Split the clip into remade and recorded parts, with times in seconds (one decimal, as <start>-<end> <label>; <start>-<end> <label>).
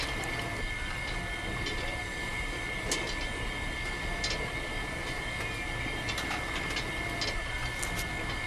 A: 0.0-8.5 recorded